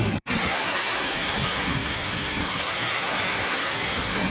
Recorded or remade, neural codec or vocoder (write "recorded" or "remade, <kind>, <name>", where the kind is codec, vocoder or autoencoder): remade, codec, SNAC